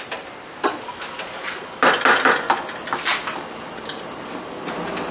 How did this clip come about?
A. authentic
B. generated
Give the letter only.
A